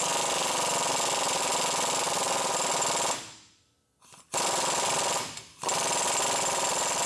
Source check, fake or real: real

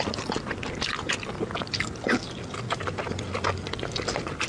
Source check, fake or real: real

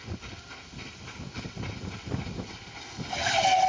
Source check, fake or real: real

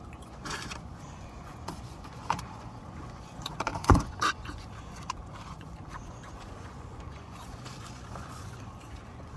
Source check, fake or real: fake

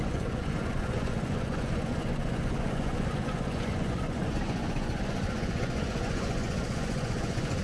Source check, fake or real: fake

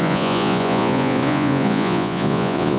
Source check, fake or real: fake